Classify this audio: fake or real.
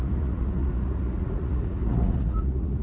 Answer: fake